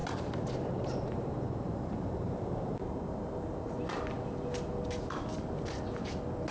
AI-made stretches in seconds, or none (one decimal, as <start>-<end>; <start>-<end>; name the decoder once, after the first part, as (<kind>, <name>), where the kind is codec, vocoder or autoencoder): 0.0-3.8 (vocoder, BigVGAN v2)